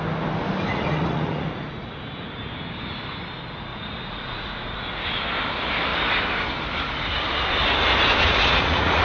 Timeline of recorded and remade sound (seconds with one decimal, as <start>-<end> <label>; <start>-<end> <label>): 0.0-0.7 recorded; 0.7-1.9 remade; 1.9-3.7 recorded; 3.7-5.2 remade; 5.2-8.3 recorded; 8.3-9.0 remade

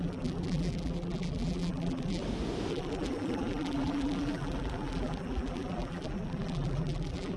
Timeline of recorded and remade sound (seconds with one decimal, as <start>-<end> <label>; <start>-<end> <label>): 0.0-2.2 remade; 2.2-2.7 recorded; 2.7-7.4 remade

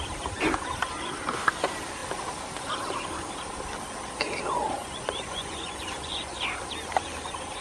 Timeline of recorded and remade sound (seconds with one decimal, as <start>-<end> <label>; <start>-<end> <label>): 0.0-4.8 recorded; 4.8-6.4 remade; 6.4-7.6 recorded

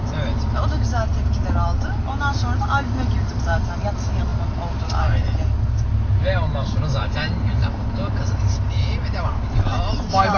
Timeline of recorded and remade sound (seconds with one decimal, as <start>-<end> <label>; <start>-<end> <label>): 0.0-10.4 recorded